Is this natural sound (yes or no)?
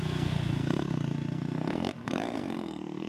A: no